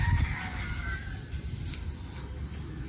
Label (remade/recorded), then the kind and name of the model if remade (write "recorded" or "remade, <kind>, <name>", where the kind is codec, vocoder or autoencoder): recorded